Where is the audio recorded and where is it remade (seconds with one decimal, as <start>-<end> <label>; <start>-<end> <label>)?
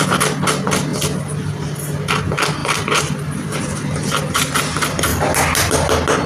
0.0-2.6 recorded; 2.6-4.5 remade; 4.5-6.3 recorded